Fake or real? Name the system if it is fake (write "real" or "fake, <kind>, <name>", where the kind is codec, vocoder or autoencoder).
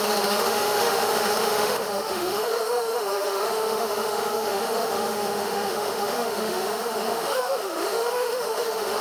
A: fake, autoencoder, DAC-VAE